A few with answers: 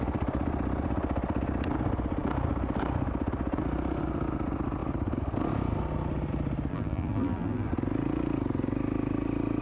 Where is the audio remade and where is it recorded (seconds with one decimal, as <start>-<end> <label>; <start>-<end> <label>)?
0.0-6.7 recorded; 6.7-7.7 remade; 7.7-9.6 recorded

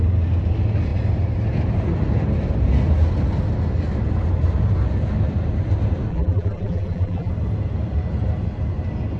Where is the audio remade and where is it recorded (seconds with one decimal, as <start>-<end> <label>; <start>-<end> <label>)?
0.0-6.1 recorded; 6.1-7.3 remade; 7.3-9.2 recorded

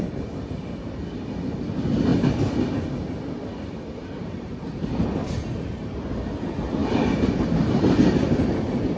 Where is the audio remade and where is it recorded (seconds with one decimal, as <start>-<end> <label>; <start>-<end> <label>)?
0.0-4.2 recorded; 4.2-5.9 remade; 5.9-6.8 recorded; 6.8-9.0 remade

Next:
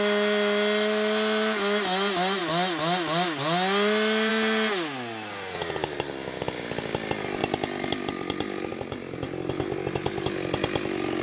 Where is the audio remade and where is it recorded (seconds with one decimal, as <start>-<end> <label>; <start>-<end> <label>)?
0.0-11.2 recorded